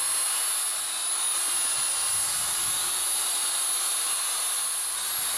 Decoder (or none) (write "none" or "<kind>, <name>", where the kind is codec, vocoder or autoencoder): none